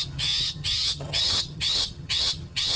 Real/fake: fake